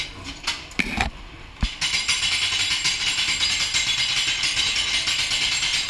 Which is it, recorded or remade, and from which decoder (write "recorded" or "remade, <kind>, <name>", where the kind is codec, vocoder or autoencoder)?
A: recorded